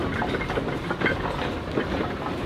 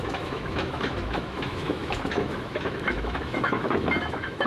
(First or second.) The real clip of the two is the first